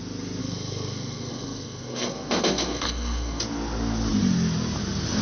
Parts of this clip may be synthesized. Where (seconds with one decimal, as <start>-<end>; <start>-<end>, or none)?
0.4-3.4